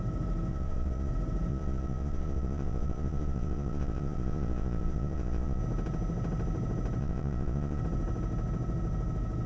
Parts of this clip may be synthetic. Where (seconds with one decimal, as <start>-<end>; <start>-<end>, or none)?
0.5-1.1; 1.5-5.6; 7.0-7.8